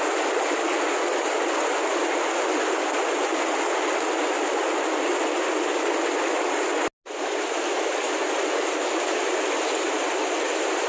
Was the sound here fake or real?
real